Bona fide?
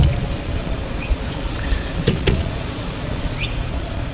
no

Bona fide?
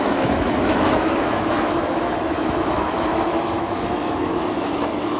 no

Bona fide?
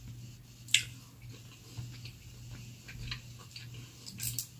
yes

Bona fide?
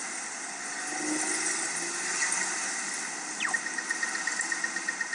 yes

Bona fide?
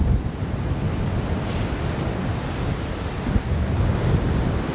yes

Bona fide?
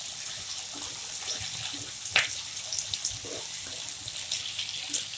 yes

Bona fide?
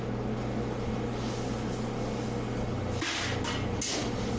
yes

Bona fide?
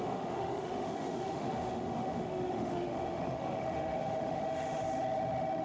no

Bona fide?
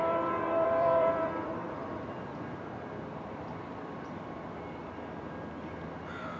no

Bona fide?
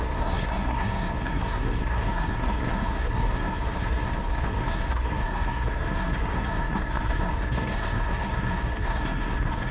no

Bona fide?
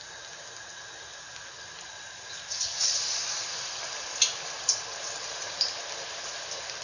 yes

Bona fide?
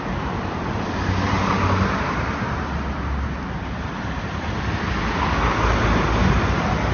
yes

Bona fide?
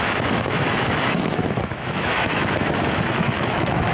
no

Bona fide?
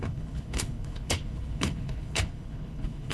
no